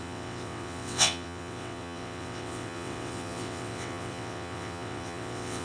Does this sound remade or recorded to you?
remade